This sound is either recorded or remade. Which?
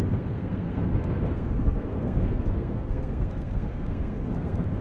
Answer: remade